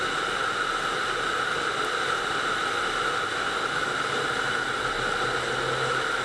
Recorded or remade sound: recorded